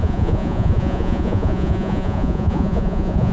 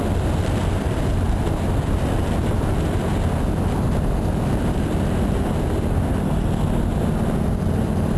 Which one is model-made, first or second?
first